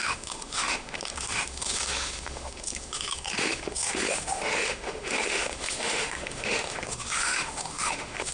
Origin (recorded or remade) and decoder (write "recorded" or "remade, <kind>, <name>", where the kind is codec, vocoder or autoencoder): remade, autoencoder, DAC-VAE